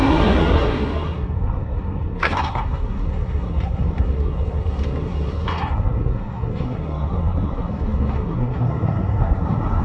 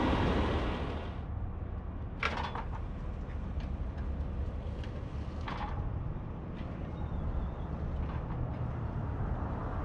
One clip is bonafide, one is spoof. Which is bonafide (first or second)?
second